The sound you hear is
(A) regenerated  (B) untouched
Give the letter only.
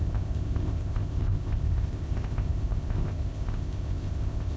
A